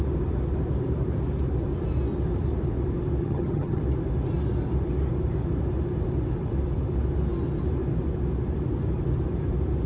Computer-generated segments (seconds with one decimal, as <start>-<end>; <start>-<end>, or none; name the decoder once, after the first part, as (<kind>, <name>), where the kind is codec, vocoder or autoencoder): 3.2-3.8 (vocoder, HiFi-GAN)